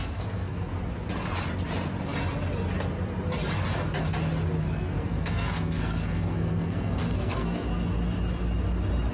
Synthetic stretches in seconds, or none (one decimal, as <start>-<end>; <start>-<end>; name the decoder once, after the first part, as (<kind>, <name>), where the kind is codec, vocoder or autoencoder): 0.0-0.7 (codec, SNAC); 4.6-7.7